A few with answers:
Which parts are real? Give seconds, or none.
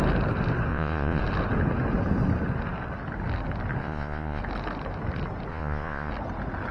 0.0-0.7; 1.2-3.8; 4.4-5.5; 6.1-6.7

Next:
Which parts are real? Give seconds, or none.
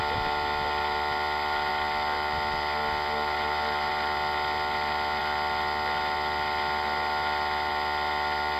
0.0-8.6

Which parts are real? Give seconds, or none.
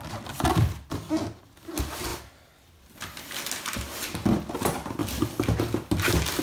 0.0-6.4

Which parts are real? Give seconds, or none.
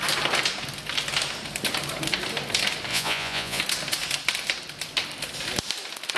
0.0-2.9; 3.6-6.2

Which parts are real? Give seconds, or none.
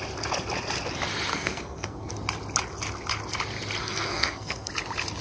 0.0-1.3; 2.1-3.8; 4.7-5.2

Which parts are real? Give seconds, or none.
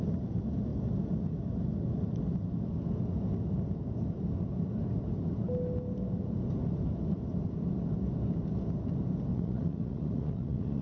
0.0-9.3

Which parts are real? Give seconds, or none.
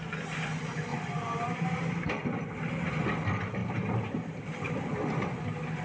0.0-0.9; 2.2-3.6; 4.7-5.8